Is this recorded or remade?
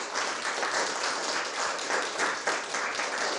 recorded